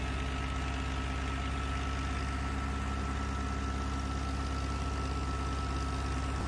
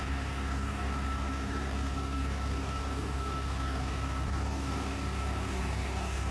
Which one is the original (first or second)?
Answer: first